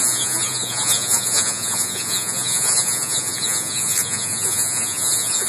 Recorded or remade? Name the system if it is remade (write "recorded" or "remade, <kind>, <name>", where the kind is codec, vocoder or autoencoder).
remade, vocoder, Vocos